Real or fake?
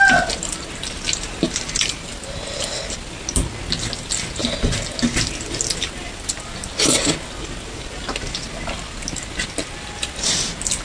real